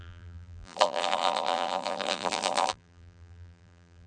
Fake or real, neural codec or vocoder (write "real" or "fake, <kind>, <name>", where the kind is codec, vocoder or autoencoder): fake, vocoder, BigVGAN v2